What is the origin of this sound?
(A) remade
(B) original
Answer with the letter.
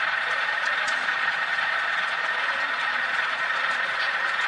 A